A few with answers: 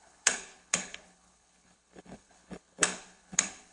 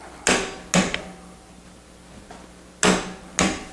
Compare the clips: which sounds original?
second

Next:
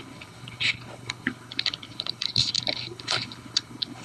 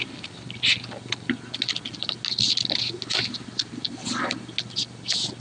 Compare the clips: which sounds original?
second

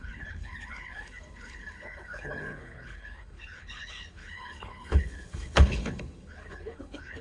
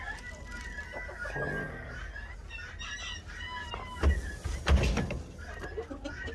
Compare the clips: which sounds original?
second